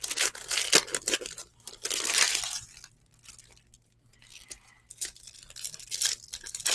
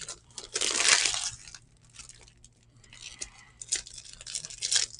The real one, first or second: first